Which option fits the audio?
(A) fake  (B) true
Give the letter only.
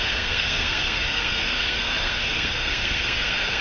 A